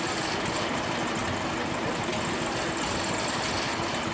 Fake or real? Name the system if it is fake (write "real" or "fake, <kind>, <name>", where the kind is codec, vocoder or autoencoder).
real